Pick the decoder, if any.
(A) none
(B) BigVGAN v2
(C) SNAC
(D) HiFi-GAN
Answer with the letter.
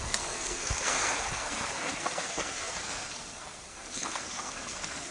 C